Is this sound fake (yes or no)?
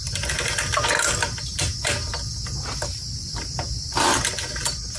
no